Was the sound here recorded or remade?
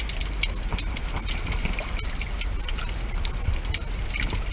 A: recorded